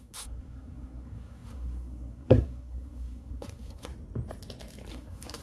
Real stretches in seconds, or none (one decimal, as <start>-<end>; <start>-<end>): 3.9-4.9